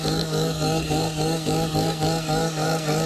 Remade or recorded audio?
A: remade